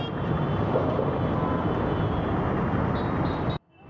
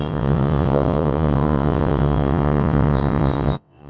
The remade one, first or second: second